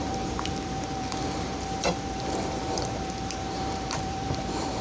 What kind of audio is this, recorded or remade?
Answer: remade